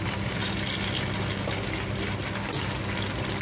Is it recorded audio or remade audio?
recorded